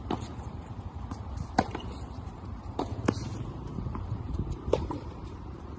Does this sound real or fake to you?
fake